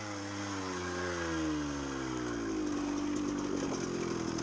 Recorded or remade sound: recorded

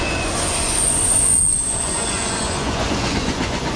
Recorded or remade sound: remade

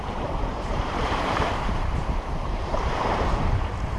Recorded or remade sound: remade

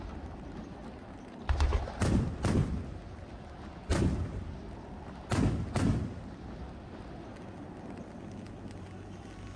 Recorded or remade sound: recorded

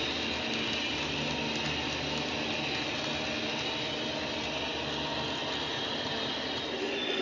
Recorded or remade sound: recorded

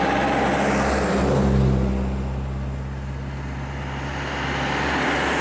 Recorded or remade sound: recorded